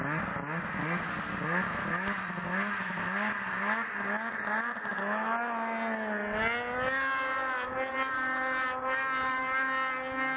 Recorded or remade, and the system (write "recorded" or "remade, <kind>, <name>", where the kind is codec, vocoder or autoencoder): recorded